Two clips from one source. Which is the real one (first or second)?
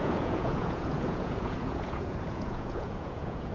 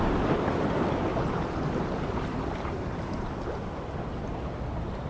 second